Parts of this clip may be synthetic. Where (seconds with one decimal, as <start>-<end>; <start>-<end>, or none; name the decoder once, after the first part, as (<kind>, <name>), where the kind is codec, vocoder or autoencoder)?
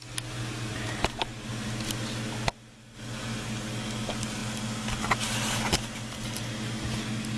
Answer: 0.7-1.5 (vocoder, BigVGAN v2)